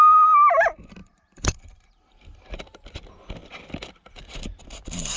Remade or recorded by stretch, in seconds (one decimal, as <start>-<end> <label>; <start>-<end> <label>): 0.0-1.0 recorded; 1.0-2.2 remade; 2.2-5.2 recorded